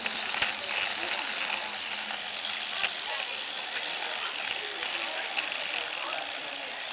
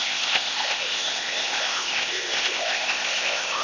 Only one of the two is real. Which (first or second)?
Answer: first